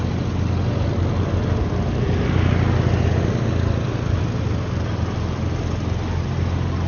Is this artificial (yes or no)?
no